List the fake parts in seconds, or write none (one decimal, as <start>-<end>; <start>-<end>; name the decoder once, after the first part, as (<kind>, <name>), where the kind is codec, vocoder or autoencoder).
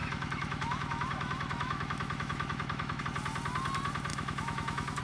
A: 0.0-3.0 (autoencoder, DAC-VAE); 4.1-5.0